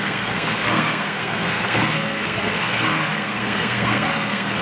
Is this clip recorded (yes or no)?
no